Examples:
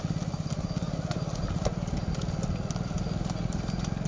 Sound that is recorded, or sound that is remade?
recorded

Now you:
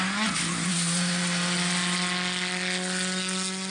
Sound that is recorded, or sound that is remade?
recorded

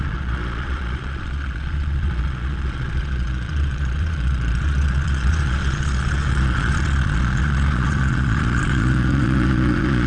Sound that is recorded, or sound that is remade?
remade